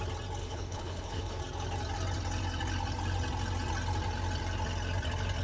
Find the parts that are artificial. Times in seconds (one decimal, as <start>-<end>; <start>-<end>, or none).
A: 0.4-1.4

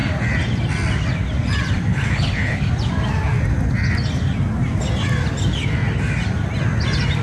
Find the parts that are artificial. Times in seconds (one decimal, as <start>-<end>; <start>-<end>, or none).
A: 1.9-2.6

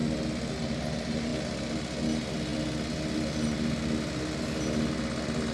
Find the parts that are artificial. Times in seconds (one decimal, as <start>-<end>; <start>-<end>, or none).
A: none

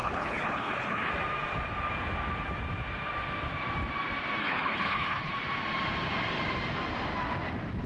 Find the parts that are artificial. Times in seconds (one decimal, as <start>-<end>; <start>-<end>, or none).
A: 0.0-1.1; 4.4-5.3

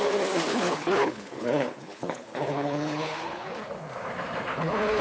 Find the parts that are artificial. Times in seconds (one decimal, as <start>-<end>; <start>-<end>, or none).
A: 0.5-3.5; 4.5-5.0

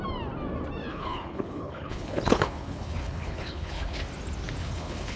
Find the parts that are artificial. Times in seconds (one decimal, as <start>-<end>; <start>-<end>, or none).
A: 0.9-4.0; 4.6-5.2

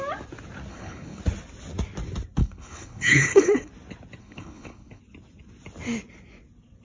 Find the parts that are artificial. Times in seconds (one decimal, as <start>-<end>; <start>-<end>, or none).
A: 0.7-1.2; 2.4-3.7; 4.2-5.0